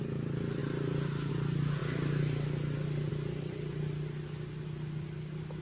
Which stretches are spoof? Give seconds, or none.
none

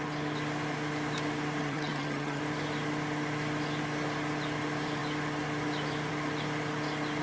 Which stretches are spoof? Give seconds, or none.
1.6-2.4 (vocoder, HiFi-GAN)

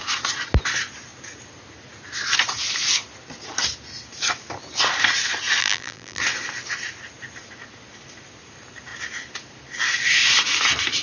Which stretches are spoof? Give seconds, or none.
5.6-6.2 (vocoder, BigVGAN v2)

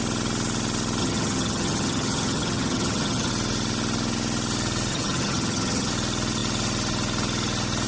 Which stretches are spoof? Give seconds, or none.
1.0-3.3 (vocoder, HiFi-GAN); 4.9-5.9

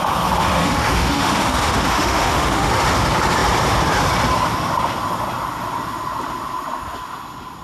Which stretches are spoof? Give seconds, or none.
0.6-2.7 (autoencoder, DAC-VAE)

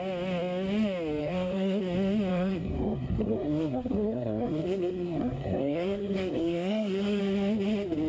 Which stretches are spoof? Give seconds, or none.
1.2-1.8 (codec, SNAC); 2.3-7.2